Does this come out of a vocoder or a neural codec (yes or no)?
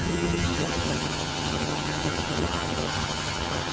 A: yes